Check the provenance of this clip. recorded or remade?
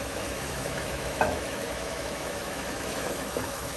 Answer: remade